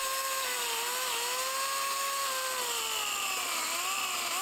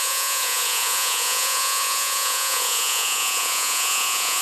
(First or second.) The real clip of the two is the first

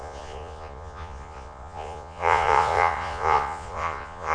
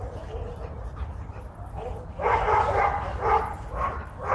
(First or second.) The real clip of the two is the second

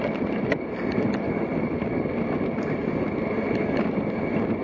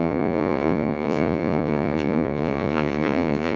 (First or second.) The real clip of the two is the first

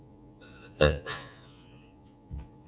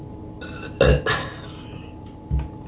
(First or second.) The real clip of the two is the second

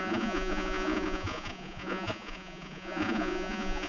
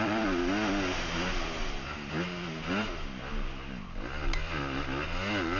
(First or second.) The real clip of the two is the second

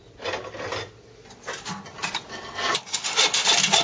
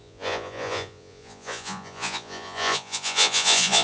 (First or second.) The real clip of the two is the first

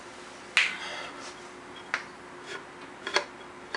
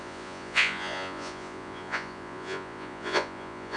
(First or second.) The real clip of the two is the first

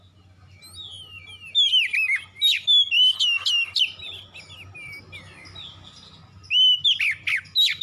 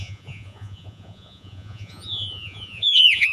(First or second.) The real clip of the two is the first